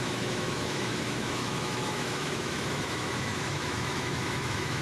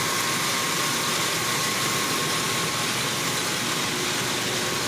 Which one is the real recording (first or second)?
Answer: second